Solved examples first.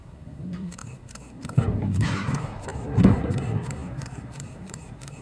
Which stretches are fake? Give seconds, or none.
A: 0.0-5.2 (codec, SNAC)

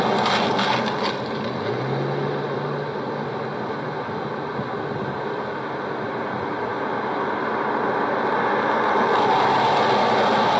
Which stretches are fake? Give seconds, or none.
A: none

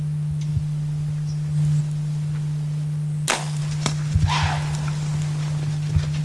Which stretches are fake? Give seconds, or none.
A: none

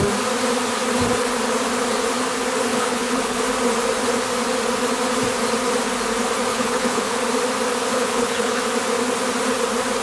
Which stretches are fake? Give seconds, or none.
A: 2.7-3.4 (codec, HILCodec); 6.5-7.2; 7.9-8.6